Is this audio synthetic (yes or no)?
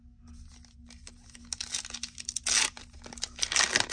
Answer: no